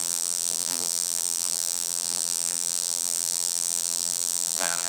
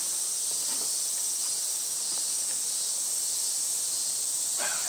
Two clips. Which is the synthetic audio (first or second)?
first